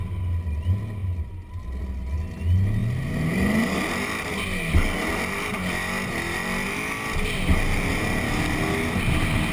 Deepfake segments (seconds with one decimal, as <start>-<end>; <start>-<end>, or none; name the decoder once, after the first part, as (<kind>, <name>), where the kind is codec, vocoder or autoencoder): none